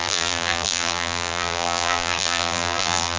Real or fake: fake